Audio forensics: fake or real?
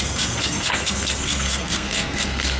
fake